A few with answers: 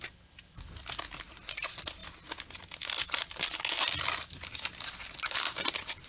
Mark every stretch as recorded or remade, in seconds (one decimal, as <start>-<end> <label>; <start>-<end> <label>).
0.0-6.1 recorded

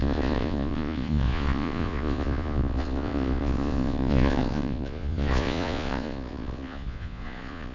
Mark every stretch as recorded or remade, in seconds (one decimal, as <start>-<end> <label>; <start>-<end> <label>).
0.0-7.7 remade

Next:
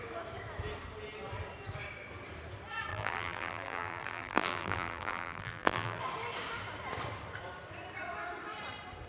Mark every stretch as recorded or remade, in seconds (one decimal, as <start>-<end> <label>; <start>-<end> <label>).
0.0-2.9 recorded; 2.9-6.0 remade; 6.0-9.1 recorded

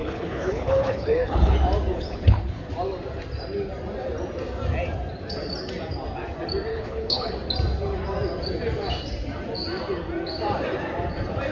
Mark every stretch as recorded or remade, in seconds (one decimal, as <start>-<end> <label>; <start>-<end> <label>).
0.0-1.5 remade; 1.5-1.9 recorded; 1.9-2.7 remade; 2.7-6.7 recorded; 6.7-7.3 remade; 7.3-11.5 recorded

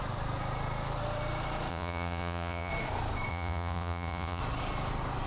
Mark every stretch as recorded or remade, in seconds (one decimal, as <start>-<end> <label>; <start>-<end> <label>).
0.0-1.7 recorded; 1.7-2.7 remade; 2.7-3.3 recorded; 3.3-4.4 remade; 4.4-5.3 recorded

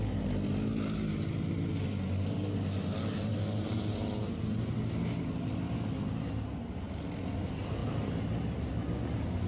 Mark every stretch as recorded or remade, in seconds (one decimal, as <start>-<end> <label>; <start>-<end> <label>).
0.0-9.5 recorded